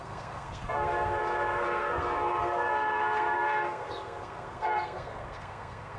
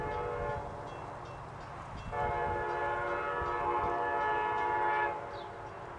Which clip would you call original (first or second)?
second